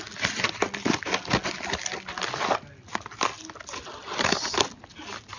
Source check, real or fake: real